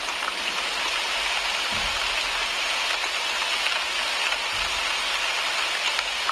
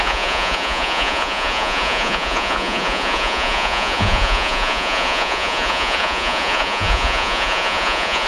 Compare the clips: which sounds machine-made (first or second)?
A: second